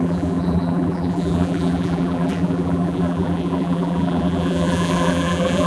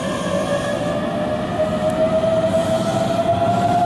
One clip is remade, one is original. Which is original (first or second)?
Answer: second